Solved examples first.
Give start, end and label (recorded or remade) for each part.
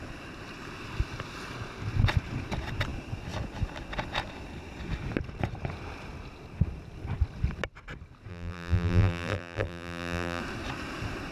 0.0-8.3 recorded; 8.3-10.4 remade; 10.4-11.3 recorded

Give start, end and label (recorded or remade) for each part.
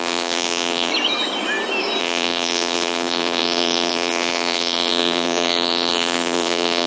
0.0-0.9 remade; 0.9-2.0 recorded; 2.0-6.9 remade